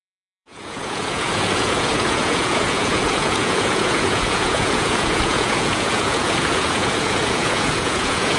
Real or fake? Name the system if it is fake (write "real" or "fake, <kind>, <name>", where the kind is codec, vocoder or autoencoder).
fake, vocoder, Vocos